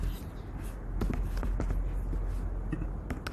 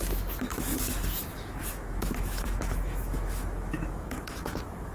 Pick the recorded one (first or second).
first